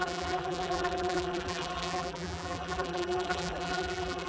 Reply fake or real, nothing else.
fake